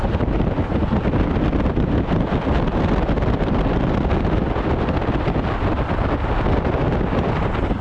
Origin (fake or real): real